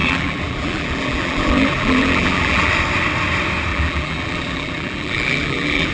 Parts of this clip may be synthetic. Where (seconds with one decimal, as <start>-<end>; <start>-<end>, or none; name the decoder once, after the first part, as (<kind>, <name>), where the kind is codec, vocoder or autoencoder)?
0.0-2.7 (vocoder, BigVGAN v2); 3.7-5.9